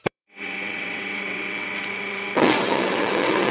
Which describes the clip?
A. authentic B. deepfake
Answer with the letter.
B